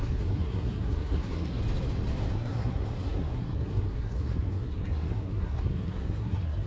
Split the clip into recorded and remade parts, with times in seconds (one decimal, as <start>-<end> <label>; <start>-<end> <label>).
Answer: 0.0-1.6 remade; 1.6-2.3 recorded; 2.3-6.7 remade